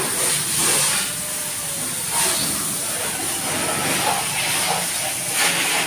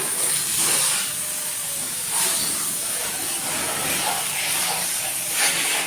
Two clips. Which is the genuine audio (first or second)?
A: first